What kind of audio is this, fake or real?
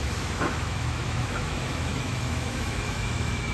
fake